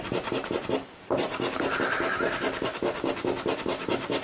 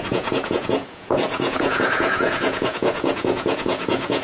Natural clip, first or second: first